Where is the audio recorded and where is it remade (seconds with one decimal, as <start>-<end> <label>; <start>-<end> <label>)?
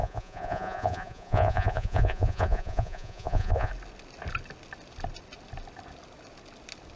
0.0-3.7 remade; 3.7-7.0 recorded